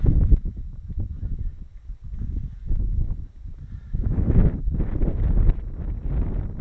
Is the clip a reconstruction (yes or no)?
no